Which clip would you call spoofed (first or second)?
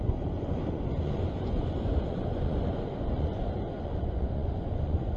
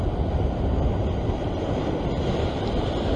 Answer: first